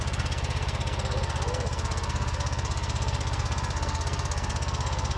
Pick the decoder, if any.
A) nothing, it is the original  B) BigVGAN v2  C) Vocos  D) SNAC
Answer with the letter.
D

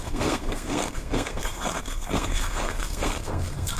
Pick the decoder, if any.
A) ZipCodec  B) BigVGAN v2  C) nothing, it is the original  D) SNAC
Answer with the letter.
D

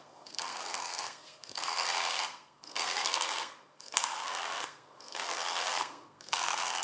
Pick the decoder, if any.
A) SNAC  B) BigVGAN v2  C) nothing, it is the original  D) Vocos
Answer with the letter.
A